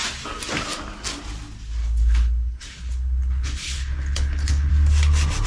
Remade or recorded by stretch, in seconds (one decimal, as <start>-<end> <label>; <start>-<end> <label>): 0.0-1.8 recorded; 1.8-4.7 remade; 4.7-5.5 recorded